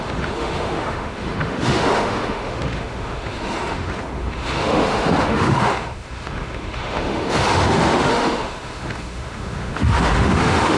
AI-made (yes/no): yes